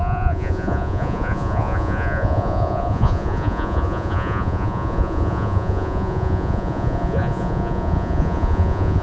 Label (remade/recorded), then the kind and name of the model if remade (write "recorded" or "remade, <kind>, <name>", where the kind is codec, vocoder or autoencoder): remade, vocoder, Vocos